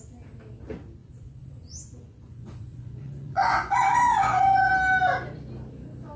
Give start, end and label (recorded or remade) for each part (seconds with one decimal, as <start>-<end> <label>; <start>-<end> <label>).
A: 0.0-1.0 recorded; 1.0-4.7 remade; 4.7-6.2 recorded